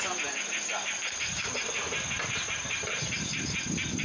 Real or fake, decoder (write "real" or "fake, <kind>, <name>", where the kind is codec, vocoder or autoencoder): fake, vocoder, BigVGAN v2